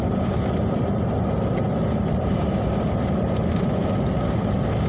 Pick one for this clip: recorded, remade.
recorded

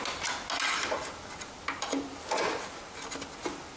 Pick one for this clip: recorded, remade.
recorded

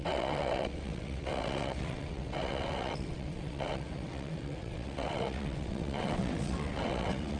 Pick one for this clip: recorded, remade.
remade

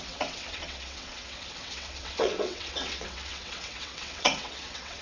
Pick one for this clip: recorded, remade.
remade